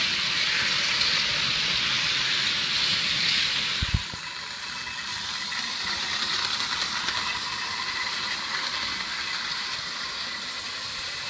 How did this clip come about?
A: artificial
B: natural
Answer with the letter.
B